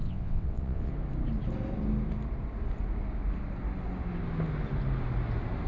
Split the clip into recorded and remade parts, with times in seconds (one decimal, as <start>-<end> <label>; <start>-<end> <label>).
0.0-0.9 remade; 0.9-5.7 recorded